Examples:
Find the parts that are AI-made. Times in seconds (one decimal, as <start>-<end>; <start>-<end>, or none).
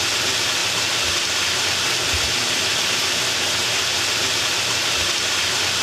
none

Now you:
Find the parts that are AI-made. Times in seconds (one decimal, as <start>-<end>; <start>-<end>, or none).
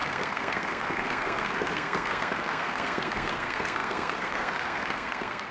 0.0-5.5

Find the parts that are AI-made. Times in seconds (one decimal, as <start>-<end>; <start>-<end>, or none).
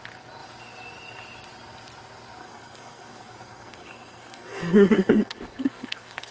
2.4-6.3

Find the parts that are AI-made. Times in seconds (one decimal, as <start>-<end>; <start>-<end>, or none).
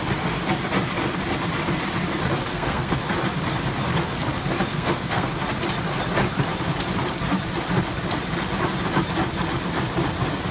2.5-3.0; 4.7-5.3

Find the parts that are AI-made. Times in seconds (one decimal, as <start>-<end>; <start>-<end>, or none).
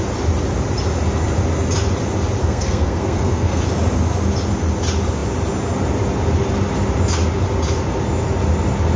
2.4-3.6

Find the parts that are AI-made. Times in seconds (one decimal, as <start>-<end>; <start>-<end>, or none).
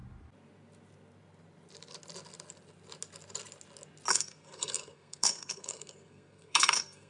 4.1-7.1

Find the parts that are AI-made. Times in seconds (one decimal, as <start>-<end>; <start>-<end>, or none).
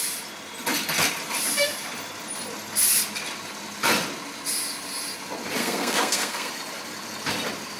5.6-6.5